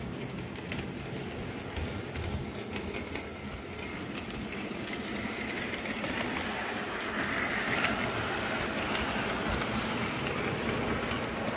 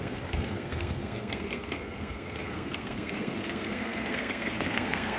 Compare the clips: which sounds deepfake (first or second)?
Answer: second